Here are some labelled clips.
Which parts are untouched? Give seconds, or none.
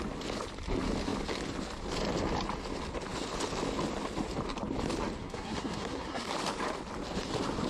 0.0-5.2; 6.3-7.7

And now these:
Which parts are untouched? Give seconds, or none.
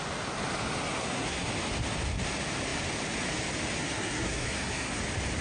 0.0-1.0; 1.5-3.8; 5.0-5.4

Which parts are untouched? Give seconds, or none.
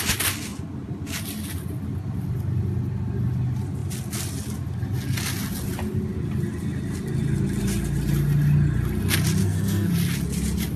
0.0-9.4; 9.9-10.8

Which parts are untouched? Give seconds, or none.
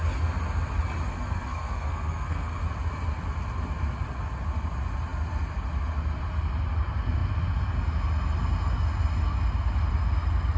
0.0-1.1; 2.6-10.6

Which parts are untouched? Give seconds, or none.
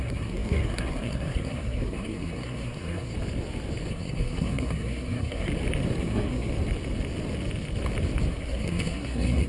3.1-3.9; 5.5-6.0; 6.5-8.3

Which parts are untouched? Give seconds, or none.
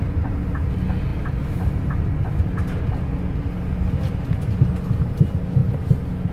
0.0-6.3